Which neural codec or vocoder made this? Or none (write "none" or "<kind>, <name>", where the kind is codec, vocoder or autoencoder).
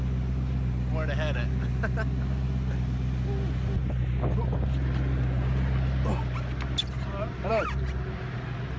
none